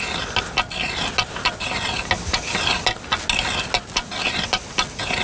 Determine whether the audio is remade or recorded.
recorded